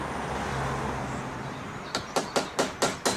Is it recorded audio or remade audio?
recorded